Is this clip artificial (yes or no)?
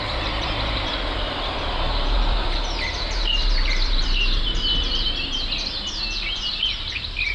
yes